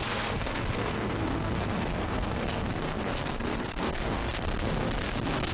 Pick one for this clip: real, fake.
fake